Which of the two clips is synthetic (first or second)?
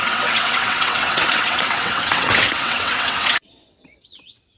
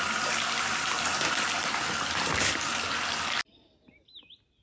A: first